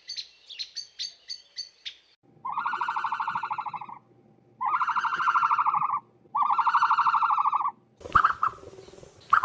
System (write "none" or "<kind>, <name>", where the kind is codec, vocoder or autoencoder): none